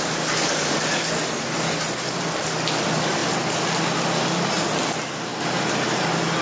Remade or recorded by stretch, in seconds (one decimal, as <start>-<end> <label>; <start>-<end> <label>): 0.0-6.4 recorded